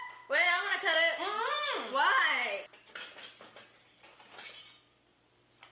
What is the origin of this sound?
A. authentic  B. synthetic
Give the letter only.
A